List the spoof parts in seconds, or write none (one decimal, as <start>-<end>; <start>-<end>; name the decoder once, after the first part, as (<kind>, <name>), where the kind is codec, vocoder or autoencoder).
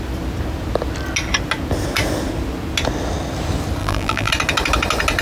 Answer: 3.8-4.3 (vocoder, BigVGAN v2)